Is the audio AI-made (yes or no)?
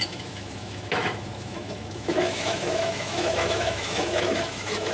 yes